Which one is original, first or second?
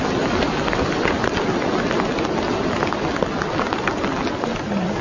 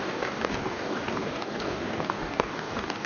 first